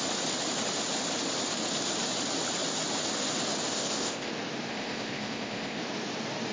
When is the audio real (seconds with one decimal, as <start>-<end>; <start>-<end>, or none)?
0.0-3.7; 4.3-4.7; 5.8-6.5